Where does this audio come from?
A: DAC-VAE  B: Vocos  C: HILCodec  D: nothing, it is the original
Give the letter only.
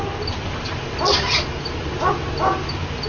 D